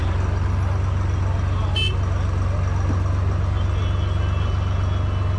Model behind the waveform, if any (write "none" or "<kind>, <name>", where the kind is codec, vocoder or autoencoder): none